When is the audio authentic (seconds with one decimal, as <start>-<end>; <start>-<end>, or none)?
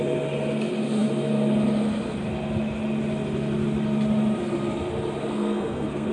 0.0-5.3